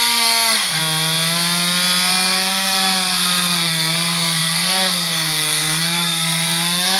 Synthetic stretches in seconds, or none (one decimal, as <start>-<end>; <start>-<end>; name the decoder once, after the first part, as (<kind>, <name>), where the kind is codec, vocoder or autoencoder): 0.0-0.8 (codec, SNAC); 2.1-7.0